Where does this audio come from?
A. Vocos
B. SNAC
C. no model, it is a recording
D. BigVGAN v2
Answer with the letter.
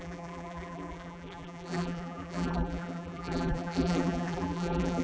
D